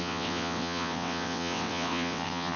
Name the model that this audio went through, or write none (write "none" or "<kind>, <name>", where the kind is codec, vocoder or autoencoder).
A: vocoder, WaveNeXt